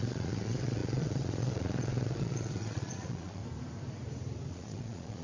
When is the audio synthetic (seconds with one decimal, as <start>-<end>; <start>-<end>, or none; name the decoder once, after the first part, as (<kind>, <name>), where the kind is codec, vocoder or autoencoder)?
0.0-3.4 (vocoder, Vocos); 4.5-5.2